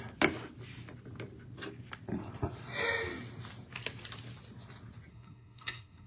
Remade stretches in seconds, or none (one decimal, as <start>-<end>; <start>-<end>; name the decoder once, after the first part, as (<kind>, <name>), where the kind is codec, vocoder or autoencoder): 5.1-6.1 (codec, SNAC)